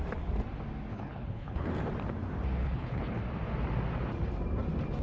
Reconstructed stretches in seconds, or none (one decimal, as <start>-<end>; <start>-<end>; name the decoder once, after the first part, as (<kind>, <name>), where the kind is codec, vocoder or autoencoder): 0.9-1.7 (codec, HILCodec); 2.6-3.2